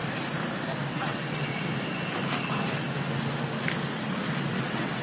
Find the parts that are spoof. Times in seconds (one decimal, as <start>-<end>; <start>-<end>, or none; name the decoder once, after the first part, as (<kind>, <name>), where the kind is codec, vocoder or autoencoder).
0.9-1.5 (vocoder, WaveNeXt); 4.5-5.0